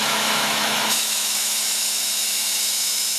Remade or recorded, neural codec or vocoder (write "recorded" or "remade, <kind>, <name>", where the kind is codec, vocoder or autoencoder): remade, autoencoder, DAC-VAE